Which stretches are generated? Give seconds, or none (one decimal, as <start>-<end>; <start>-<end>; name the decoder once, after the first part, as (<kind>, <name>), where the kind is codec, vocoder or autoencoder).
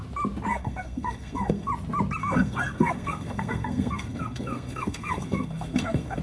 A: 0.5-1.7 (codec, SNAC); 2.2-6.2